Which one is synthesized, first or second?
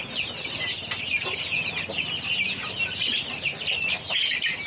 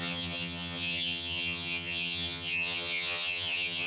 second